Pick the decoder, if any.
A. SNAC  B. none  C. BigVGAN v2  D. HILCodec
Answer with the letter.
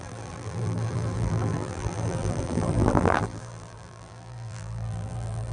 C